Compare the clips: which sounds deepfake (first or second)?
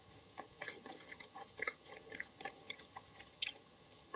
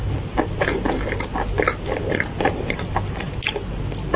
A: first